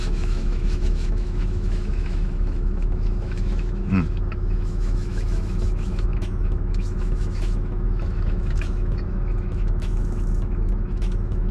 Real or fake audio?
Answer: fake